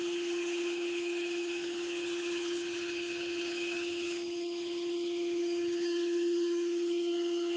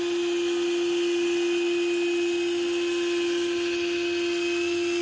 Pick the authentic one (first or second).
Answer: second